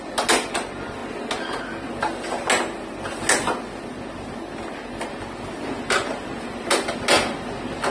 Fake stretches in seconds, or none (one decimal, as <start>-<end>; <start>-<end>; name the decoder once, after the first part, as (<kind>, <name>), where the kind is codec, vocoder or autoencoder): none